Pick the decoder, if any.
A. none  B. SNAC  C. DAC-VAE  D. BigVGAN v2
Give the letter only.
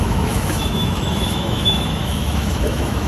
C